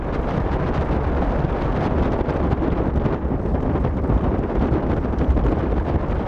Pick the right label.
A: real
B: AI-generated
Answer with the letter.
B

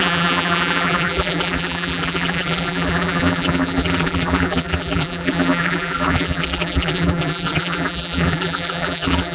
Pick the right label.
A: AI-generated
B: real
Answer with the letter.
A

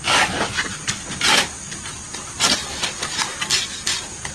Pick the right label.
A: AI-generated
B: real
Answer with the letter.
B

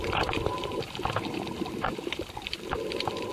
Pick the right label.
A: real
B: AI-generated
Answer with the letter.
B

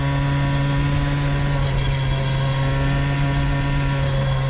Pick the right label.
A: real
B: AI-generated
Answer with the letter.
A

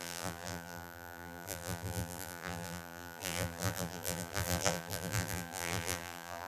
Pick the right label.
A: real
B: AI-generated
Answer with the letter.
B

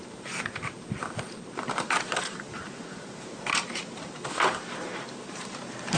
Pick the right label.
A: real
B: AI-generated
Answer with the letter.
B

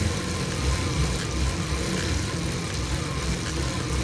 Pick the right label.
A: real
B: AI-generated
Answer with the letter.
A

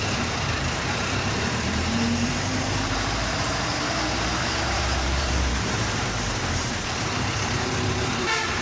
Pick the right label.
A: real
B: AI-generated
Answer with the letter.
B